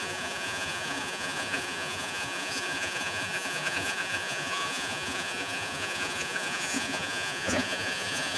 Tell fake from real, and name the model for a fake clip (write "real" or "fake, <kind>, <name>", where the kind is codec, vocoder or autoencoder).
fake, vocoder, Vocos